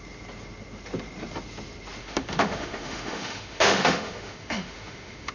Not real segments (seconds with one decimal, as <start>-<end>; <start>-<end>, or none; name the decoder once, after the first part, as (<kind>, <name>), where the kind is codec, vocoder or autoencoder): 2.0-5.3 (autoencoder, DAC-VAE)